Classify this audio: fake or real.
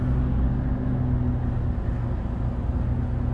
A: real